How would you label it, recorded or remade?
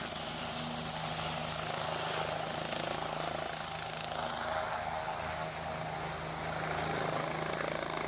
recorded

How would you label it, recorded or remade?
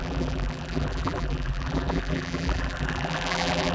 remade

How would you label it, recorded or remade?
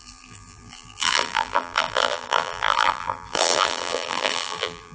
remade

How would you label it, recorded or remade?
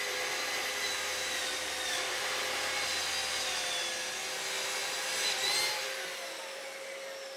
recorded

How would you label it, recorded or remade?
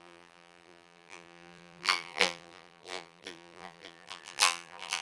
remade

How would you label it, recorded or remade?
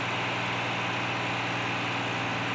recorded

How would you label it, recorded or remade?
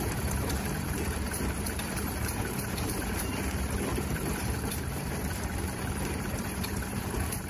remade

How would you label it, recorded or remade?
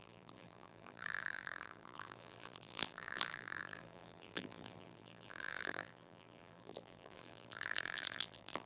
remade